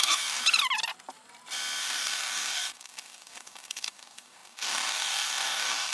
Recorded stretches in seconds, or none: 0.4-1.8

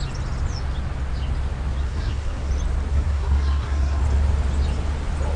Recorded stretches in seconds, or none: 0.0-1.8; 2.5-2.9; 4.0-5.4

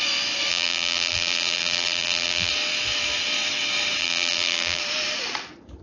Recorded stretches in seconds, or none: 0.0-0.5; 2.5-4.0; 4.8-5.8

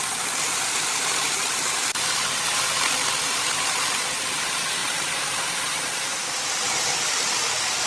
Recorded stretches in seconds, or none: 0.0-4.8; 6.0-7.9